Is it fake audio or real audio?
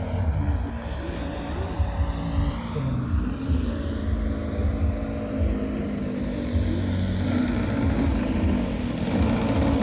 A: real